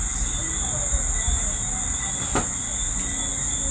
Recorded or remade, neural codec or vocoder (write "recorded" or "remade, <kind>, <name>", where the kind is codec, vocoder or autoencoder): recorded